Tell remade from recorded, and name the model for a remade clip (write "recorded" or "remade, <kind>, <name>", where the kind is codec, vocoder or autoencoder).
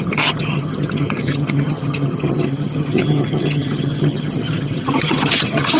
remade, vocoder, HiFi-GAN